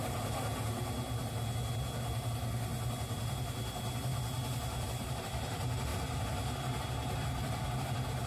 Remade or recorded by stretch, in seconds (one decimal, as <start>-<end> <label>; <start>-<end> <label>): 0.0-8.3 recorded